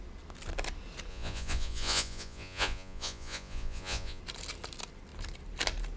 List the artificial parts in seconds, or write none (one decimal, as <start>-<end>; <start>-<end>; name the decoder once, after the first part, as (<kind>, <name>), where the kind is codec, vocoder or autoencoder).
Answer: 1.1-4.2 (vocoder, Vocos)